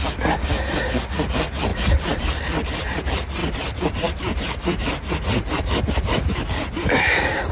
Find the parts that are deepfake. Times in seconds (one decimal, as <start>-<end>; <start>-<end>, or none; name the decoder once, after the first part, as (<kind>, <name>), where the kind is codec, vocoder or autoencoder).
1.7-3.0 (vocoder, BigVGAN v2); 3.4-5.8